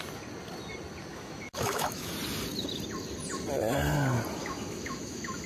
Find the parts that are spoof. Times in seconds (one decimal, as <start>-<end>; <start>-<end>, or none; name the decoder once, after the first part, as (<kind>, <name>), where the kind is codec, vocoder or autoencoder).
1.1-2.1 (autoencoder, DAC-VAE); 4.4-5.5